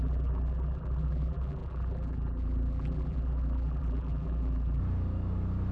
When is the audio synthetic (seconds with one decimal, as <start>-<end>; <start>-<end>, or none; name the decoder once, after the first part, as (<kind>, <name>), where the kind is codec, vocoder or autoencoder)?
0.0-4.8 (vocoder, BigVGAN v2)